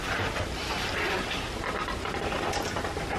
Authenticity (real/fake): real